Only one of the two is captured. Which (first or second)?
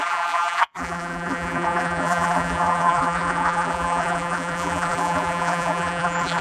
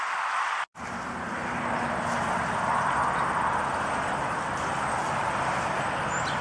second